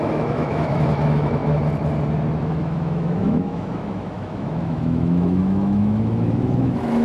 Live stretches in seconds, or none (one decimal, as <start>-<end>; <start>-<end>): 1.4-2.4